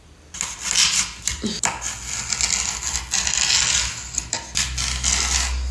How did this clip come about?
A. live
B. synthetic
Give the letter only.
A